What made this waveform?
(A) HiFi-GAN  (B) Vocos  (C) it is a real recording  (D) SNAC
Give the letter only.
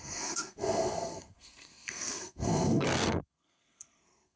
D